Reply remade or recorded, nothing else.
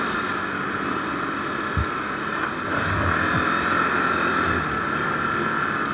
recorded